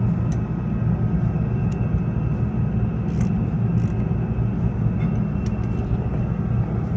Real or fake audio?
real